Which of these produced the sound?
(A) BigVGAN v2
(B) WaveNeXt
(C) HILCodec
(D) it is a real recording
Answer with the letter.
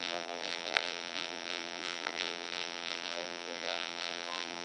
A